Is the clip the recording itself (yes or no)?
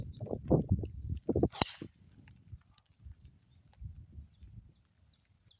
yes